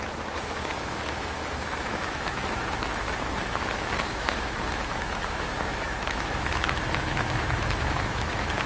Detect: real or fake fake